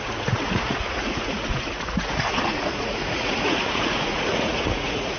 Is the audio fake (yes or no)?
yes